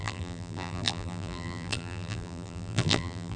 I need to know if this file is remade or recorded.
remade